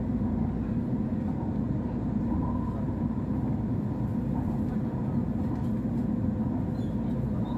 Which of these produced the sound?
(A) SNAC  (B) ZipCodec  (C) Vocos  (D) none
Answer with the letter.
D